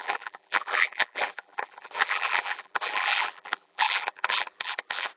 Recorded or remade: remade